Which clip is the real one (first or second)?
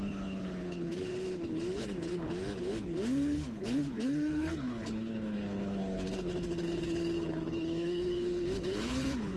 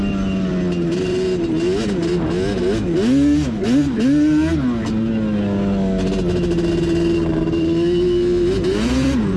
second